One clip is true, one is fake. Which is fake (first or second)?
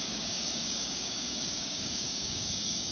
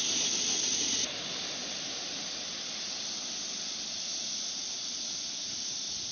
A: first